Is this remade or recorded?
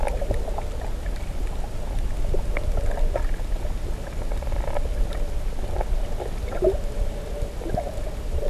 recorded